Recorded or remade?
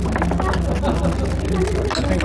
recorded